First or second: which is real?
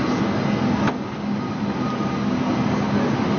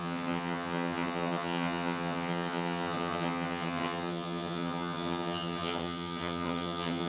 first